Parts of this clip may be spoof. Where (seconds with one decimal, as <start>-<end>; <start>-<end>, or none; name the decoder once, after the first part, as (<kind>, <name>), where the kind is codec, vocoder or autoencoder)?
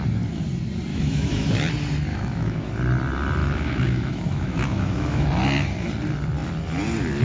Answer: 0.9-1.5 (autoencoder, DAC-VAE); 2.1-2.7; 3.4-5.3